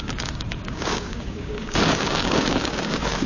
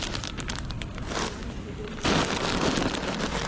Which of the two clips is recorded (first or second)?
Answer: second